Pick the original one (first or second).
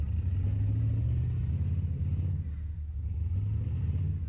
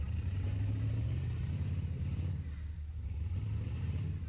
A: first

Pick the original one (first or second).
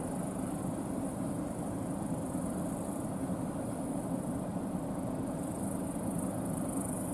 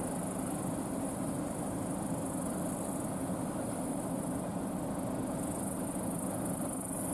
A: second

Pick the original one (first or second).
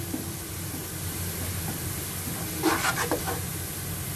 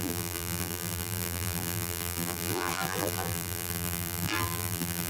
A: first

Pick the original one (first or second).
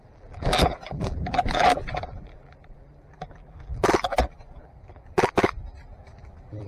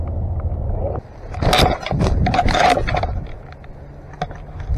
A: second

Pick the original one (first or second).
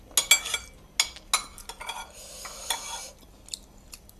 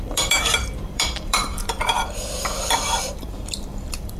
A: first